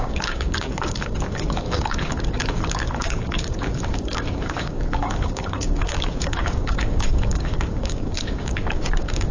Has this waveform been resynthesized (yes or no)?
yes